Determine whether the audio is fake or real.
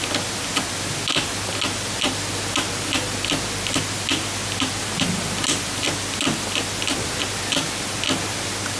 real